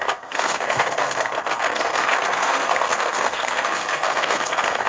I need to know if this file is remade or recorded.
remade